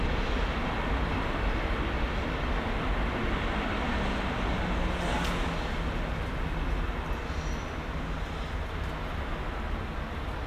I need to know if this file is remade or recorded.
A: recorded